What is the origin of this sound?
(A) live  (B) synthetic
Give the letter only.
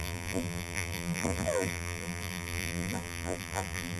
B